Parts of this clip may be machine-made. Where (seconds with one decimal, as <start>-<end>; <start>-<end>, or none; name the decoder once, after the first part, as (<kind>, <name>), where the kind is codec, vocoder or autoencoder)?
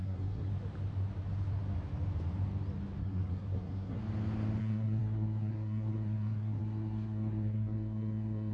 0.0-0.5 (codec, SNAC); 3.0-4.0; 4.6-8.5